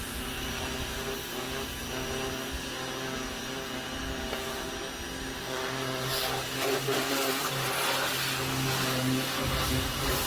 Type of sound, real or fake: real